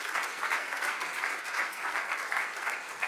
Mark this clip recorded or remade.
remade